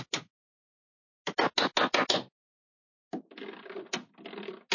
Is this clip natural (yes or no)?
yes